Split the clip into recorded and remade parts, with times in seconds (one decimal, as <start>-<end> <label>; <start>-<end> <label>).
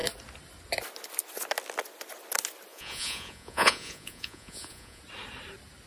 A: 0.0-2.7 recorded; 2.7-5.0 remade; 5.0-5.9 recorded